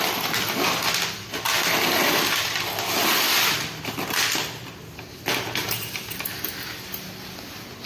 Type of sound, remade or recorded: recorded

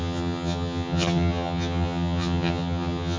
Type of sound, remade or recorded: remade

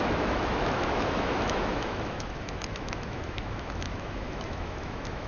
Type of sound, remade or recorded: remade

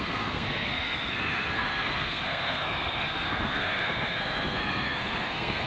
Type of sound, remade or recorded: remade